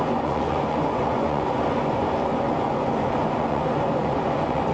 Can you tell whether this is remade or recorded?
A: remade